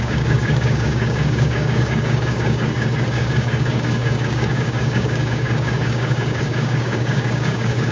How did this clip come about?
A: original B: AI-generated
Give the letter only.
B